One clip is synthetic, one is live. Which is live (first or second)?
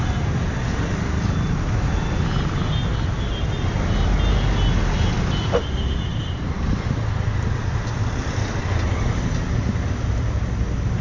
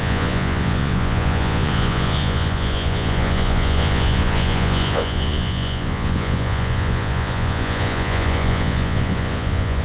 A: first